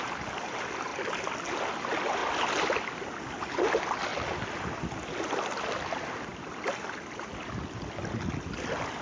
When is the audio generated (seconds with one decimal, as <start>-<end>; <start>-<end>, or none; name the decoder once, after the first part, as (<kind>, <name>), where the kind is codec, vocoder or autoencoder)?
2.2-2.8 (vocoder, BigVGAN v2); 6.3-7.3